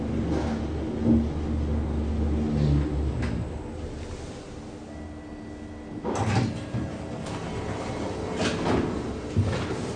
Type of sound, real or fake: real